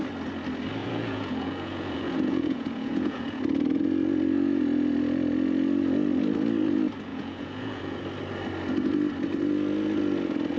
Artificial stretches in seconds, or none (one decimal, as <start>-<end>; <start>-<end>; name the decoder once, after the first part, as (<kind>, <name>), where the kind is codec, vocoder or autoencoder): 0.8-3.4 (vocoder, Vocos); 7.1-8.0